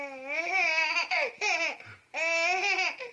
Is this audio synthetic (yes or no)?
no